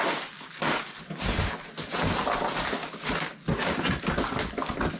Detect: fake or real real